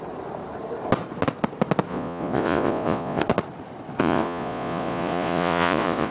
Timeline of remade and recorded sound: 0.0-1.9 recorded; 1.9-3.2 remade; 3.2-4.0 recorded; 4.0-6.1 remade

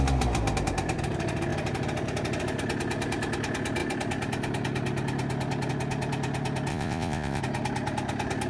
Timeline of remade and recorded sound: 0.0-6.7 recorded; 6.7-7.4 remade; 7.4-8.5 recorded

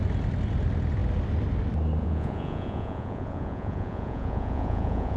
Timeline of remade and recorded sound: 0.0-2.0 recorded; 2.0-5.2 remade